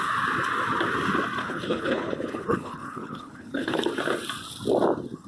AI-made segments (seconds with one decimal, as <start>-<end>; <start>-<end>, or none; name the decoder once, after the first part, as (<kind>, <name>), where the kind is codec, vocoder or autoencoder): 1.4-3.8 (codec, HILCodec)